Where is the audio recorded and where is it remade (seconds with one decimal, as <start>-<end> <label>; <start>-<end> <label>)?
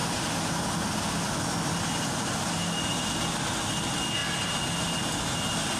0.0-5.8 recorded